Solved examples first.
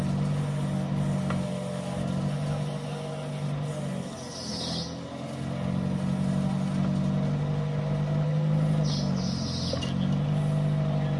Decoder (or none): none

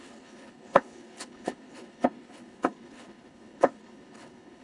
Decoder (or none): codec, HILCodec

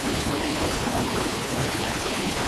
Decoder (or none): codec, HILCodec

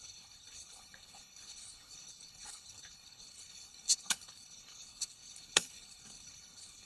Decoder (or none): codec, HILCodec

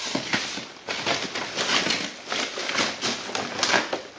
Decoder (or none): none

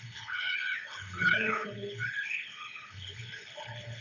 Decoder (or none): codec, HILCodec